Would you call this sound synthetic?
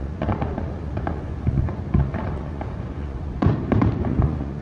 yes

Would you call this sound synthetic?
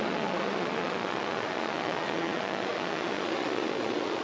yes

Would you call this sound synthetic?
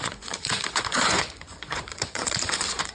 yes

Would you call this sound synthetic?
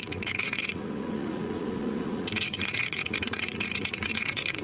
yes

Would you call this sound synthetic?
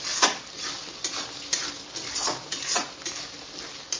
no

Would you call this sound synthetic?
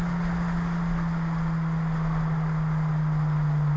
no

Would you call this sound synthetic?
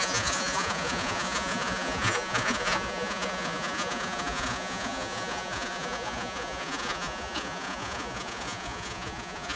yes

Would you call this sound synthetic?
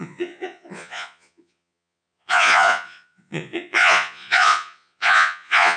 yes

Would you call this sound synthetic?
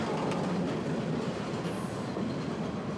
no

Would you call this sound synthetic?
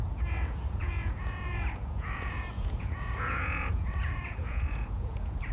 yes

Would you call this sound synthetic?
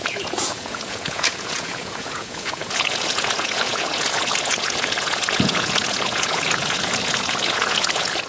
yes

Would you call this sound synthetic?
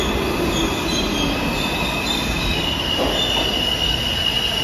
no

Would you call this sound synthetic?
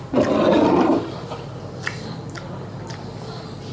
no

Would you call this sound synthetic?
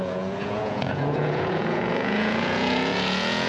yes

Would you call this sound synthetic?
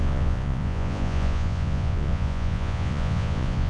yes